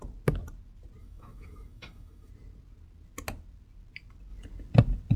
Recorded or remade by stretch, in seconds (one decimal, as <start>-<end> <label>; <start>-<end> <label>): 0.0-1.0 recorded; 1.0-2.3 remade; 2.3-5.2 recorded